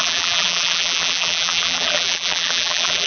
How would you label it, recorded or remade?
remade